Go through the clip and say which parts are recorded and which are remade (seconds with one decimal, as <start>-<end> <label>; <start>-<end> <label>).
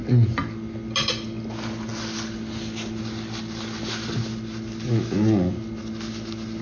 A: 0.0-6.6 recorded